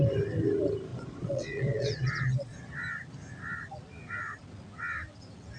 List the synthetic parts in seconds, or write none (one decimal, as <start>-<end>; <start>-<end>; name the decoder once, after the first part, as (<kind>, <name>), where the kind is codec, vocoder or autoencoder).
0.9-2.6 (vocoder, Vocos)